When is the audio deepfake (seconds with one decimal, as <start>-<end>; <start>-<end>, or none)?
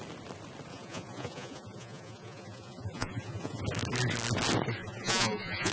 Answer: 0.7-3.6; 4.8-5.7